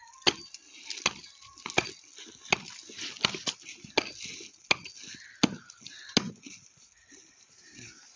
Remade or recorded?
recorded